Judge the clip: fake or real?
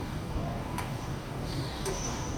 fake